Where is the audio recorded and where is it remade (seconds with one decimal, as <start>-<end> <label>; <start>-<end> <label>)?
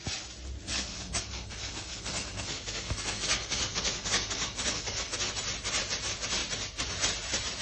0.0-0.7 recorded; 0.7-5.3 remade; 5.3-7.6 recorded